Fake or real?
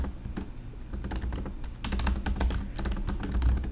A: real